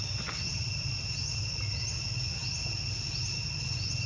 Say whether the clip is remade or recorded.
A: recorded